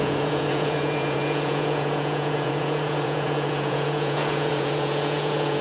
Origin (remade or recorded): remade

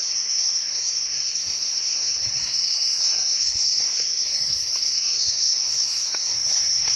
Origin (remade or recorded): remade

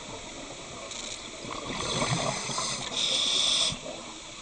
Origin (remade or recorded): recorded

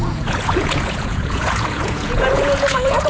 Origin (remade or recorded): remade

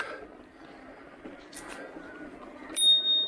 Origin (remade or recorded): recorded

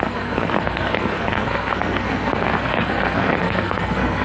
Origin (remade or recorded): remade